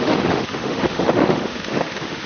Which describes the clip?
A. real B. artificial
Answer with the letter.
B